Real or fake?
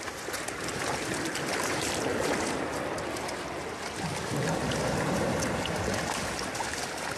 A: real